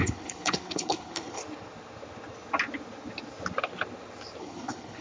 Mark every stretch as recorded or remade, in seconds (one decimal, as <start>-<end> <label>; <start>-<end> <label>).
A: 0.0-1.4 remade; 1.4-4.4 recorded; 4.4-5.0 remade